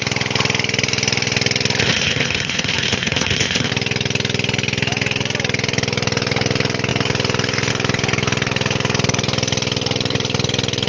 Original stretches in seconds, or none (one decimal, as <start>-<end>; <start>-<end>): 0.0-1.8; 3.7-10.9